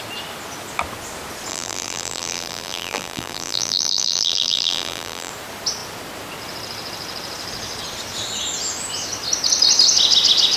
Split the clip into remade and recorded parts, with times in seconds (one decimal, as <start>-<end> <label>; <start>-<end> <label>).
0.0-1.5 recorded; 1.5-5.3 remade; 5.3-10.6 recorded